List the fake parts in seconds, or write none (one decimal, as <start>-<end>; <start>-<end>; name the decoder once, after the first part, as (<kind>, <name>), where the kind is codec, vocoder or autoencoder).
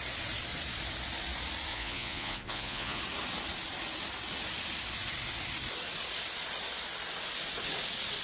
1.7-3.0 (vocoder, Vocos)